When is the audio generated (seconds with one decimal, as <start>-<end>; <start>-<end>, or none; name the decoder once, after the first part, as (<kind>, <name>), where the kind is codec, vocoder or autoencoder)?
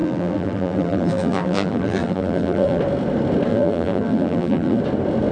0.0-2.8 (vocoder, BigVGAN v2); 3.5-4.8